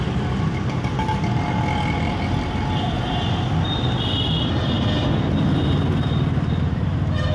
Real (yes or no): yes